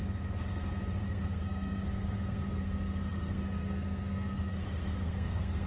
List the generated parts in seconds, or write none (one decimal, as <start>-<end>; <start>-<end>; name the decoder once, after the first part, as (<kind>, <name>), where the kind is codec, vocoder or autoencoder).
0.9-5.7 (codec, SNAC)